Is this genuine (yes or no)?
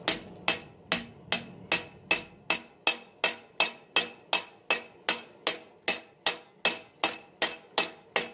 yes